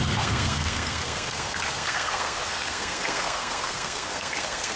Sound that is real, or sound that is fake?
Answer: fake